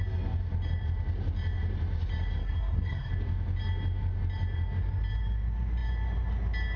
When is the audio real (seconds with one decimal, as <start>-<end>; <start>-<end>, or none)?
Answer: 0.0-2.4; 3.1-6.8